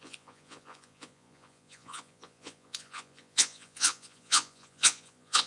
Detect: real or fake fake